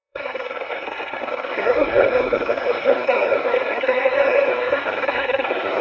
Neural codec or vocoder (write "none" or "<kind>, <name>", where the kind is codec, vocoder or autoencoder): codec, SNAC